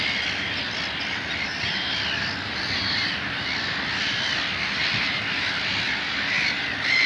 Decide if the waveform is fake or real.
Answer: real